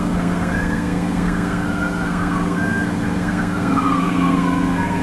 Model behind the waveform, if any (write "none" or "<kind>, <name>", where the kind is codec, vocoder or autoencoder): codec, SNAC